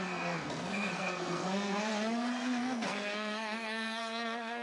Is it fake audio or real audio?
fake